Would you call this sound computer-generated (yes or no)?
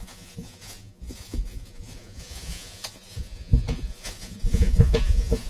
yes